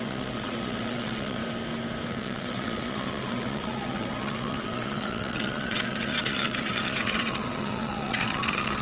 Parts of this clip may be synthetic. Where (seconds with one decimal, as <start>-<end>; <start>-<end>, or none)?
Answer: 0.0-1.4; 2.1-8.8